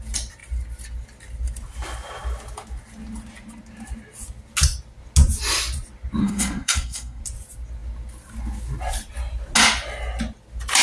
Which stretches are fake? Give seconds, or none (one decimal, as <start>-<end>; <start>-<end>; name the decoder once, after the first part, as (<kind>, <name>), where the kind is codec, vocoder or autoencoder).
6.2-7.2 (codec, SNAC)

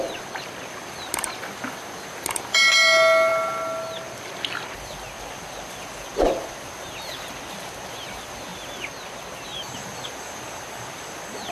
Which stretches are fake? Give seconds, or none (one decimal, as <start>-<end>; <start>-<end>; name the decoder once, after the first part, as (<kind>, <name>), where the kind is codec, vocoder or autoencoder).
none

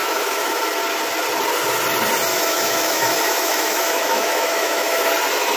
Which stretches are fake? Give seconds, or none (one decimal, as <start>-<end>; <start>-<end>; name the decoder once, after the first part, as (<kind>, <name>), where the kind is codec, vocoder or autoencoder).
0.0-0.5 (autoencoder, DAC-VAE); 2.3-5.1

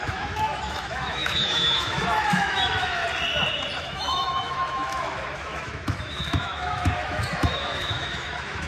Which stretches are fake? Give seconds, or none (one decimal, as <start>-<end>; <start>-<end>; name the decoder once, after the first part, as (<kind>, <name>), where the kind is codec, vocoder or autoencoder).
0.0-3.0 (autoencoder, DAC-VAE); 3.8-8.7

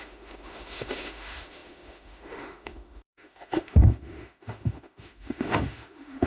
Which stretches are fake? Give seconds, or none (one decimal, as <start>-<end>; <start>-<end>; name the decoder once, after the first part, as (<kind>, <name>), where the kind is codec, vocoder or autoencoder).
0.0-6.3 (autoencoder, DAC-VAE)

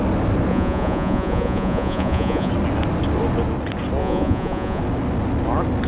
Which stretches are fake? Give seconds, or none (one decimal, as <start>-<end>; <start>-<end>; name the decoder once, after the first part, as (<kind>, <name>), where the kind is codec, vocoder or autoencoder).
0.5-2.5 (vocoder, Vocos); 4.0-4.8

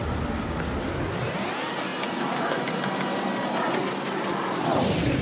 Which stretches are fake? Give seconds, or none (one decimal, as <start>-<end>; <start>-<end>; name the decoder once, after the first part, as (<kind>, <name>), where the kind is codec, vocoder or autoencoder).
none

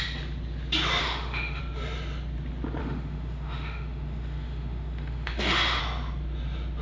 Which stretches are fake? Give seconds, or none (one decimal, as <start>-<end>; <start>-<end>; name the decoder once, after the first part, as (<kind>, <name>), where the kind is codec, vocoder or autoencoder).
1.0-1.6 (autoencoder, DAC-VAE); 2.8-5.8